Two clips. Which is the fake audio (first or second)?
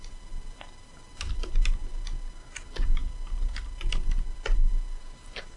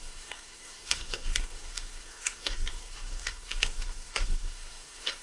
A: second